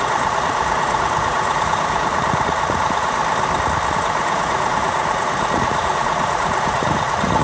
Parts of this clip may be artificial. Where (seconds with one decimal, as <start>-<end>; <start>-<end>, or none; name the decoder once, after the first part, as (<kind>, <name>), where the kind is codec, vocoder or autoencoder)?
0.0-3.2 (vocoder, Vocos); 3.9-7.4